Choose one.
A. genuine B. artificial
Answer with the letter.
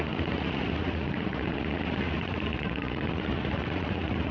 B